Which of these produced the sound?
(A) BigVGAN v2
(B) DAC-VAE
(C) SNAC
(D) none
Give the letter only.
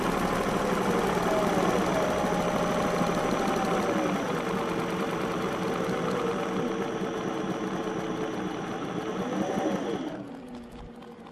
D